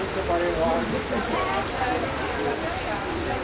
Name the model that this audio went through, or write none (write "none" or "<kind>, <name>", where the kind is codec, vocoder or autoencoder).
none